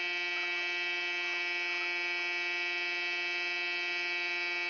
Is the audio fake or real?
real